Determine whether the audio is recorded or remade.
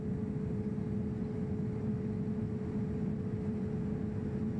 recorded